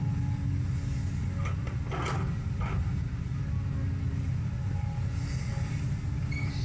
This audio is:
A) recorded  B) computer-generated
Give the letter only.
A